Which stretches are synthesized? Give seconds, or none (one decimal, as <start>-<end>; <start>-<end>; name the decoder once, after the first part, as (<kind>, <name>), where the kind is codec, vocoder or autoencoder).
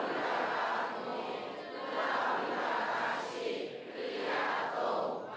3.7-4.5 (codec, SNAC)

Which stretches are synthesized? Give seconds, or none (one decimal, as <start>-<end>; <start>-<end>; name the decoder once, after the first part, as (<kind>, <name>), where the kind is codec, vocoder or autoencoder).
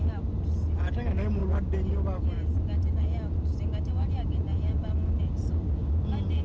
none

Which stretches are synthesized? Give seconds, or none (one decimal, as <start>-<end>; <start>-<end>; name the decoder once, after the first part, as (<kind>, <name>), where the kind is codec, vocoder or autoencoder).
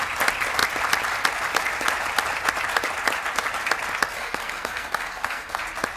4.1-5.6 (codec, SNAC)